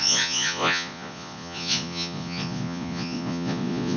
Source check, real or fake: fake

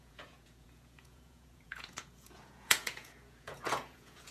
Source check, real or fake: fake